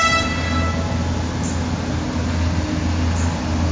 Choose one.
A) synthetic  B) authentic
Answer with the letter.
B